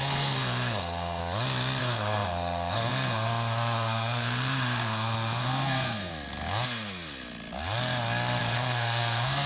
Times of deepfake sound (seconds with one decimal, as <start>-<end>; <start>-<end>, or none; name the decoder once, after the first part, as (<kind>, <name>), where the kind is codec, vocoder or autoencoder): 0.0-1.2 (codec, SNAC); 1.8-6.1; 8.4-9.5